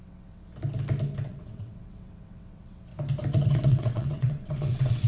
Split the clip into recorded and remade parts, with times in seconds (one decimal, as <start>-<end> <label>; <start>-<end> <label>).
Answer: 0.0-0.5 remade; 0.5-1.2 recorded; 1.2-2.9 remade; 2.9-3.5 recorded; 3.5-5.1 remade